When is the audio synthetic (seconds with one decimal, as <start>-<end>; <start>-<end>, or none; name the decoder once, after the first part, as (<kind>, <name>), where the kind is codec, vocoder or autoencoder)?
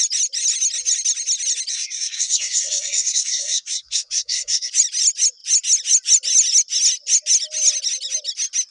1.7-4.7 (codec, SNAC)